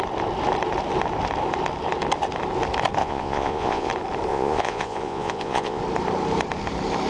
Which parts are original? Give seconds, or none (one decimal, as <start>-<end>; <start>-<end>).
0.0-3.0; 3.9-4.3; 5.8-7.1